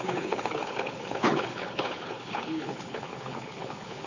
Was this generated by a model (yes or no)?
yes